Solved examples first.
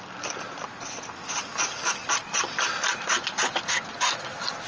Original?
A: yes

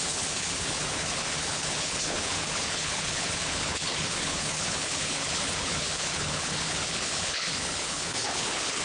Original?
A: no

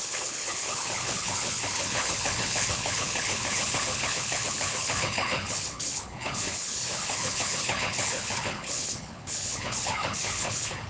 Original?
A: no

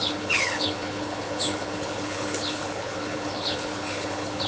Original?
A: no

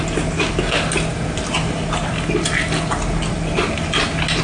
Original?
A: yes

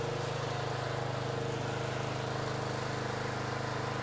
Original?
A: yes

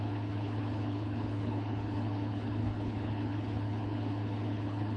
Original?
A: no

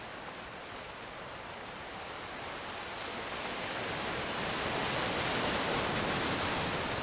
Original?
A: yes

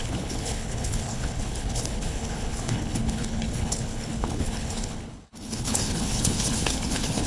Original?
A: no